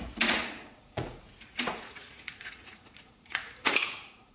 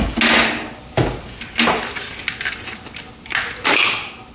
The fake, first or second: first